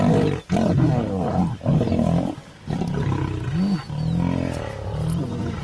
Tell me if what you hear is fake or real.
real